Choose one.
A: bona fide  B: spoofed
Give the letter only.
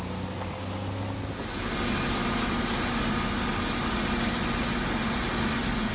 A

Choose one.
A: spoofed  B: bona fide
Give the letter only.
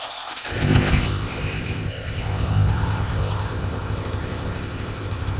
A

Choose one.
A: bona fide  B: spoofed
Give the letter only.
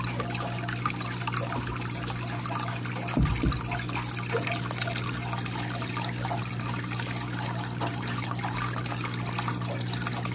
A